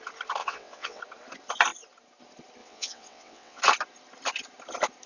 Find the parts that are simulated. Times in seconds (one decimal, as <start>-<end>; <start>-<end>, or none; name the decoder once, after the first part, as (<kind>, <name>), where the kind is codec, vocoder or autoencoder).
0.4-1.0 (vocoder, WaveNeXt); 2.6-3.6